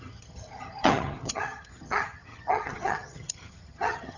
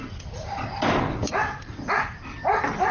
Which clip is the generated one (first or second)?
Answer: first